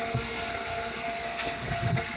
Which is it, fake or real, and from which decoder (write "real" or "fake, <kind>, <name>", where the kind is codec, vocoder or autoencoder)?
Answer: fake, codec, SNAC